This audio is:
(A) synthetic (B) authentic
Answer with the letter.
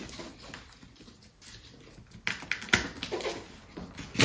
B